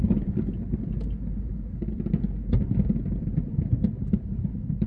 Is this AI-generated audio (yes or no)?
no